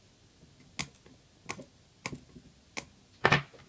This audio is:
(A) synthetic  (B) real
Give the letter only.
B